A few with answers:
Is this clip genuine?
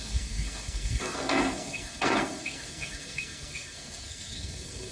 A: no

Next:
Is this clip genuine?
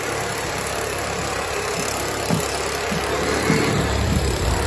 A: no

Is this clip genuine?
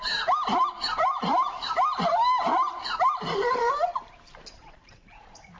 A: no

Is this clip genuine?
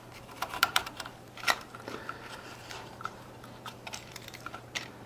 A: no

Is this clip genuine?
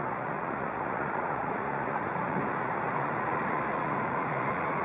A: no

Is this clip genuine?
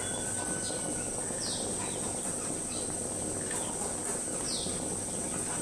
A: yes